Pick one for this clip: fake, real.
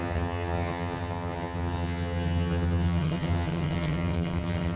fake